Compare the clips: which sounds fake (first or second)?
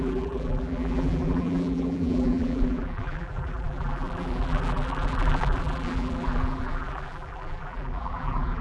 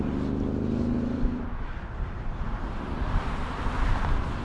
first